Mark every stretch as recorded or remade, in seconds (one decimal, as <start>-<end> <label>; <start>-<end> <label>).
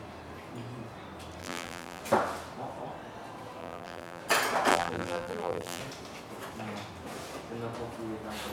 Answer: 0.0-1.4 recorded; 1.4-2.0 remade; 2.0-3.6 recorded; 3.6-4.2 remade; 4.2-4.7 recorded; 4.7-5.8 remade; 5.8-8.5 recorded